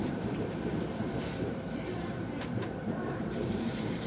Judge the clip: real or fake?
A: fake